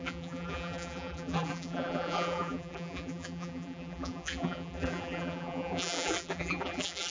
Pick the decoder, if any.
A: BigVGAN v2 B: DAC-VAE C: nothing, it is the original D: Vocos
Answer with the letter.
A